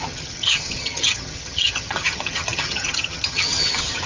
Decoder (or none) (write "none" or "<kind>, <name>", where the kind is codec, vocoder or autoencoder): vocoder, HiFi-GAN